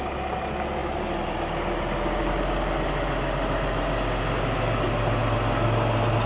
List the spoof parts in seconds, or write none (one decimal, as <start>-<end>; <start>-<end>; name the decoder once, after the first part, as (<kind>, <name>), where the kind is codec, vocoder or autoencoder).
none